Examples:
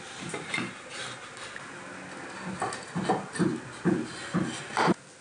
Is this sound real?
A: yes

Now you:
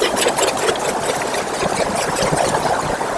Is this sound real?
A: yes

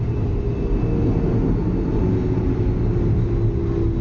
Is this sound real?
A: yes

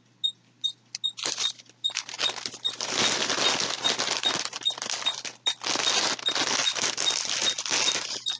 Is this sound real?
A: yes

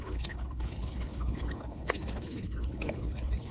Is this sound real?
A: no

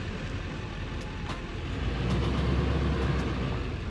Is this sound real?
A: yes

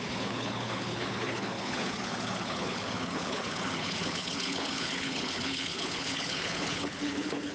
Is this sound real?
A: no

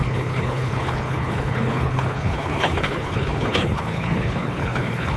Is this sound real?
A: no